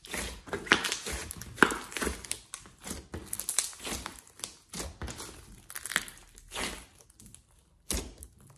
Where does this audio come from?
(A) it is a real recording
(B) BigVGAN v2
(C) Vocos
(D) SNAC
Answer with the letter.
A